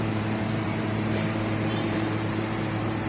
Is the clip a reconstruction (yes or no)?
yes